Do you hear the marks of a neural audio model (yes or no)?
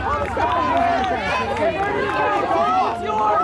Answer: no